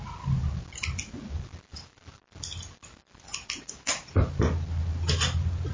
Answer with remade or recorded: recorded